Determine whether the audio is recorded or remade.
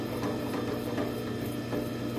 recorded